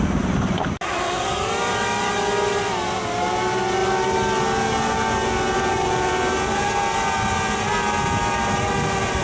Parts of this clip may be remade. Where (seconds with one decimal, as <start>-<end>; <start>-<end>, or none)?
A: none